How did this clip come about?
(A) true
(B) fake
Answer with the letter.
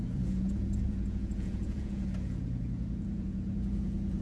B